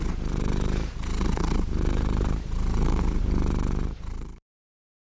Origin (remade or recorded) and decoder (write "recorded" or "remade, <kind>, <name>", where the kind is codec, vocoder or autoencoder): remade, vocoder, BigVGAN v2